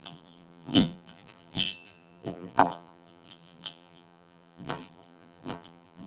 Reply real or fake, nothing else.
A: fake